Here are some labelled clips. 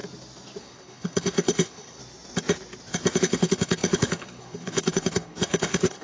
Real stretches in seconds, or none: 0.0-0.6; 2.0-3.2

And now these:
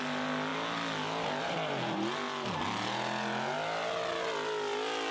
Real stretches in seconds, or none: 0.0-5.1

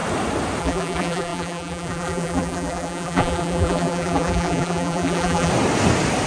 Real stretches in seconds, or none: 0.0-0.6; 5.5-6.3